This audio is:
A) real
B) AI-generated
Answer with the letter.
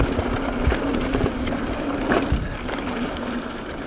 A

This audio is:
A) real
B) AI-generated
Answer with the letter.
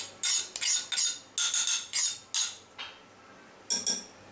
A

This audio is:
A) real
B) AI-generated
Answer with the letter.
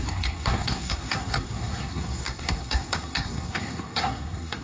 B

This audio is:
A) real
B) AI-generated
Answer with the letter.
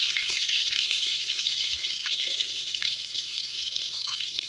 B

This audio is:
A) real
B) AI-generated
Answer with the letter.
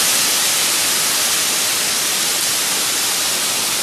A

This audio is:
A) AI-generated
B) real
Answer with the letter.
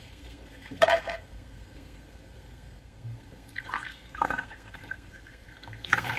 A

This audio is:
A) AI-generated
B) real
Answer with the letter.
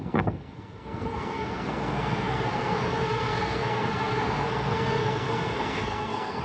A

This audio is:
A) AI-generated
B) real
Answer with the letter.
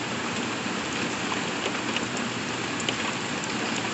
B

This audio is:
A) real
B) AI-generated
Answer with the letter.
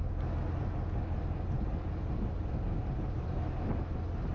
A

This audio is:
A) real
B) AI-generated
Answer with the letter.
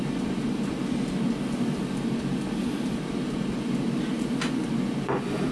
A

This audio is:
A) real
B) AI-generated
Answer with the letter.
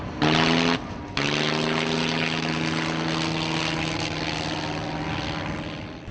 A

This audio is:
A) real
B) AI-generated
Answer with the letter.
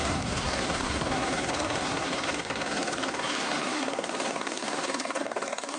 B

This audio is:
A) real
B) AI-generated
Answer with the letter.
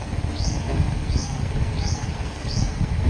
B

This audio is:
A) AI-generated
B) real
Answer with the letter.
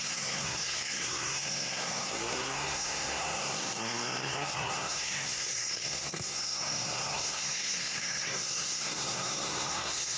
A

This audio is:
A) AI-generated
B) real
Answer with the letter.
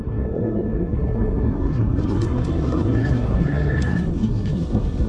A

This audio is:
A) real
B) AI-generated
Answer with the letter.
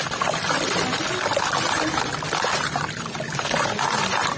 A